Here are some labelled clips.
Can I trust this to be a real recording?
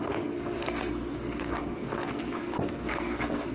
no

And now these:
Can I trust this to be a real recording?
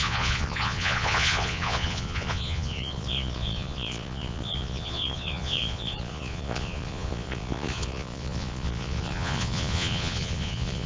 no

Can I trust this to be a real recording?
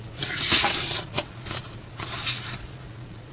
no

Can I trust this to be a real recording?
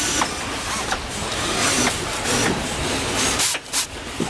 yes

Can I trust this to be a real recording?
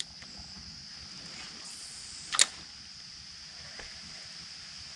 yes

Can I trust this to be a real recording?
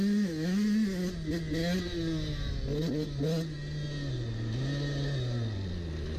yes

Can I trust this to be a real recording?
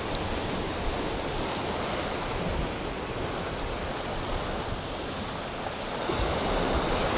yes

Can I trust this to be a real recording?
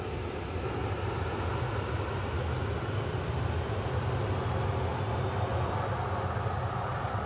yes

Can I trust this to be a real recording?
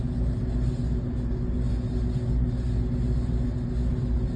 yes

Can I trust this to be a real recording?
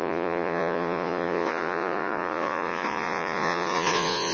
no